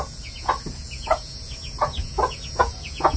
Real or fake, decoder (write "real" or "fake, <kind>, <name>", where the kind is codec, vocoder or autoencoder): fake, vocoder, Vocos